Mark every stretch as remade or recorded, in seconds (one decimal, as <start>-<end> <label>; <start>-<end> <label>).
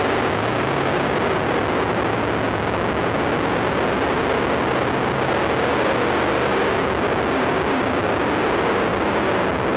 0.0-9.8 recorded